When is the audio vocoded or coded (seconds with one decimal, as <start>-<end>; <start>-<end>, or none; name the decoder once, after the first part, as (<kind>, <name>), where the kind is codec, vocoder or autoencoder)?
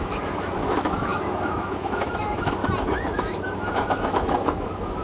0.0-2.6 (autoencoder, DAC-VAE); 3.2-5.0